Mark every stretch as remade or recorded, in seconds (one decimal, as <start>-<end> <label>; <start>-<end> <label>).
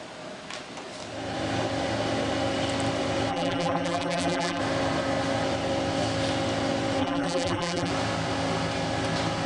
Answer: 0.0-3.3 recorded; 3.3-4.6 remade; 4.6-7.0 recorded; 7.0-7.9 remade; 7.9-9.5 recorded